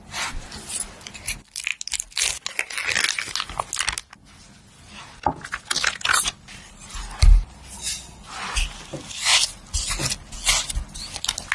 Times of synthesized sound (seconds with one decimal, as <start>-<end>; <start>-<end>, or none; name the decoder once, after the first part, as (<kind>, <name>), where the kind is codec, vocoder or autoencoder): none